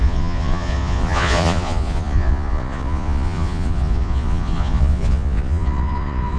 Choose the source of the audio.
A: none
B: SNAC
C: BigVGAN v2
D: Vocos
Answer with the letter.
D